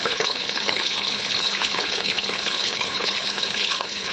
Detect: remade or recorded remade